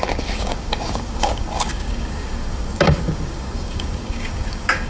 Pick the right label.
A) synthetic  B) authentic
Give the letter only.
A